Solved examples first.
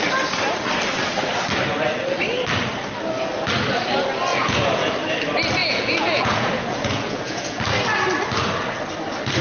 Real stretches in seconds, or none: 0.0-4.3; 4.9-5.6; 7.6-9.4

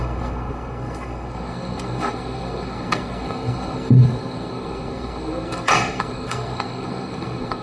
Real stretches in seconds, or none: none

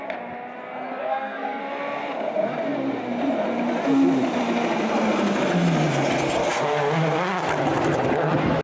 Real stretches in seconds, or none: 0.0-1.0; 1.6-8.6

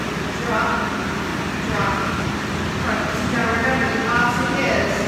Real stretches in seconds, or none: 0.0-5.1

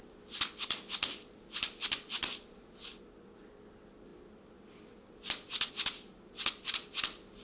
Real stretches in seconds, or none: 0.0-7.4